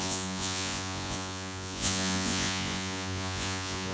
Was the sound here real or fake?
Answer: fake